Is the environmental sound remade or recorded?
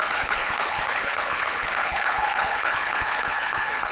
remade